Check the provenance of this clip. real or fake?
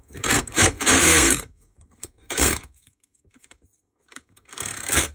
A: fake